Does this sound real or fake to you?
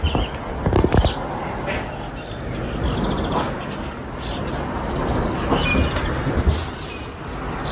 real